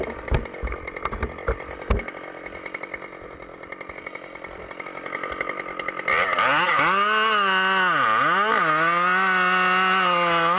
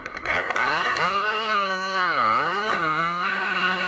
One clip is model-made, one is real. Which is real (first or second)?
first